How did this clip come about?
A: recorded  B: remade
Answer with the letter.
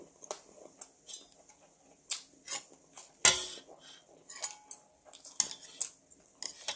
A